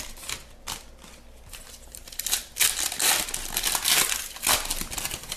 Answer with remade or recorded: recorded